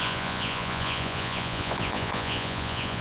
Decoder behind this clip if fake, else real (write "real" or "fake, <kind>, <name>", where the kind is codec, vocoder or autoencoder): fake, vocoder, Vocos